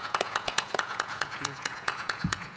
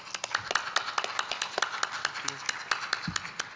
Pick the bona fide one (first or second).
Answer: second